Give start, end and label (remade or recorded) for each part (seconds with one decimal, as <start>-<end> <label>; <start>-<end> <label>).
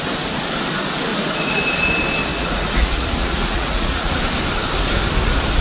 0.0-2.3 recorded; 2.3-4.1 remade; 4.1-5.6 recorded